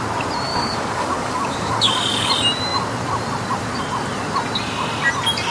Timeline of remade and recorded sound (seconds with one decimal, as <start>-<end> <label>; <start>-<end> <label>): 0.0-0.5 recorded; 0.5-2.3 remade; 2.3-5.5 recorded